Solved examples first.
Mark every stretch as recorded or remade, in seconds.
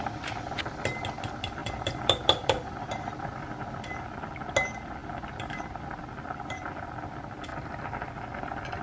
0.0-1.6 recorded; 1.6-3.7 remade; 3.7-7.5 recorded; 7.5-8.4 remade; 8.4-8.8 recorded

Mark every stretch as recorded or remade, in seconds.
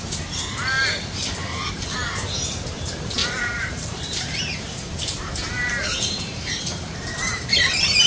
0.0-8.1 remade